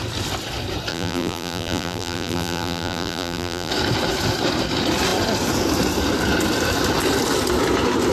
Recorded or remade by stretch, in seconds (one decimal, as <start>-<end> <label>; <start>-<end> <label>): 0.0-0.9 recorded; 0.9-3.7 remade; 3.7-8.1 recorded